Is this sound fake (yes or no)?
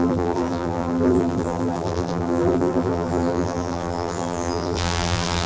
yes